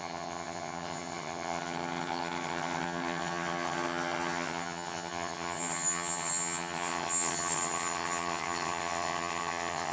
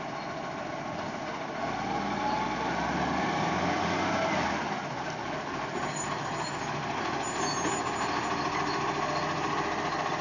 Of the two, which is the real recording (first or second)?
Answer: second